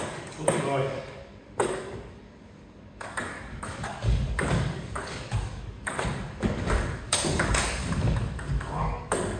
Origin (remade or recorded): remade